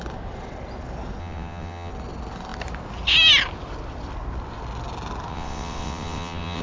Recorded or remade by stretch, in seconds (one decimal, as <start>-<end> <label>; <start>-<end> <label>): 0.0-1.2 recorded; 1.2-1.9 remade; 1.9-5.3 recorded; 5.3-6.6 remade